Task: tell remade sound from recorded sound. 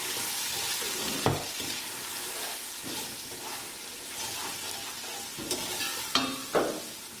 recorded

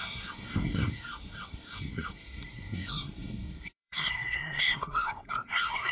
remade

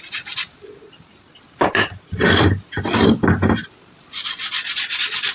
recorded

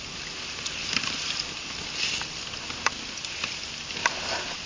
recorded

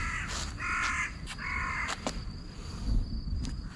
recorded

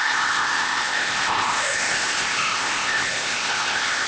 remade